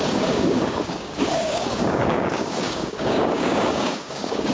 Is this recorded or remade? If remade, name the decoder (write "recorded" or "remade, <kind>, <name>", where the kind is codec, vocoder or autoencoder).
remade, codec, DAC